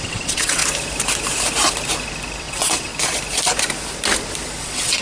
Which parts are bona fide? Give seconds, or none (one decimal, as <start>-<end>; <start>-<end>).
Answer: 0.6-2.4; 2.9-4.6